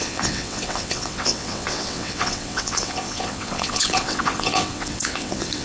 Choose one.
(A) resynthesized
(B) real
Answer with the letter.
A